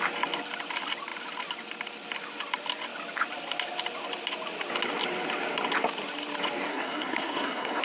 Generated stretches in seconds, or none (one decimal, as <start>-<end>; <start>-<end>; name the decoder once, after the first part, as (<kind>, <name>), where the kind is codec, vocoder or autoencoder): 6.7-7.8 (codec, SNAC)